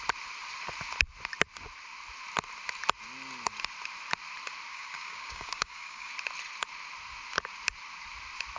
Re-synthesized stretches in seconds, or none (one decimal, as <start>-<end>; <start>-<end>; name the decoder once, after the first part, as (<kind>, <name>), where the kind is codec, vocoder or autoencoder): 4.7-6.1 (codec, DAC)